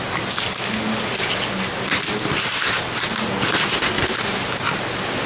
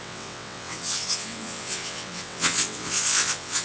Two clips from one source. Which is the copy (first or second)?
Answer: second